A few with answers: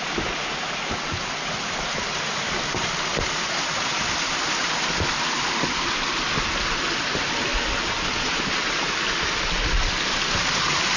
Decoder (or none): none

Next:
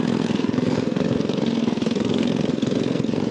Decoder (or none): codec, SNAC